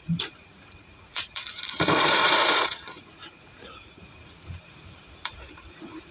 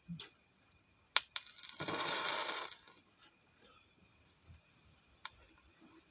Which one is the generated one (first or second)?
first